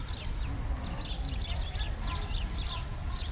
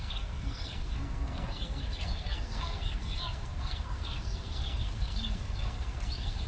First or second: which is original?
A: first